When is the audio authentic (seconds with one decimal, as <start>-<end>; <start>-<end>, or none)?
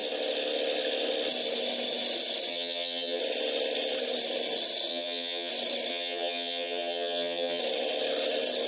0.0-2.5; 3.2-4.9; 5.5-5.9; 7.6-8.7